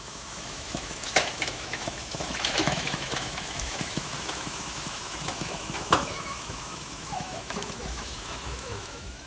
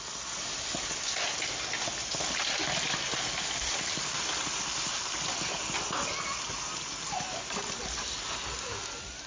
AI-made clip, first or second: first